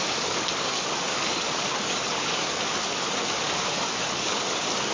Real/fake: fake